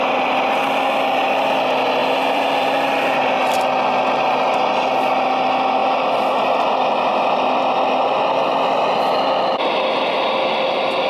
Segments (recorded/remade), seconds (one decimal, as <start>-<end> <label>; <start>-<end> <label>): 0.0-2.0 recorded; 2.0-2.9 remade; 2.9-5.8 recorded; 5.8-7.6 remade; 7.6-11.1 recorded